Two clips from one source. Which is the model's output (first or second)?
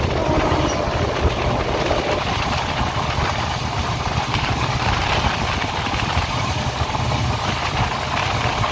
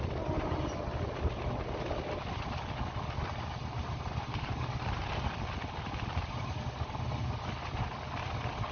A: first